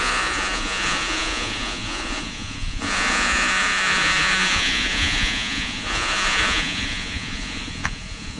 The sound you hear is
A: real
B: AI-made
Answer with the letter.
B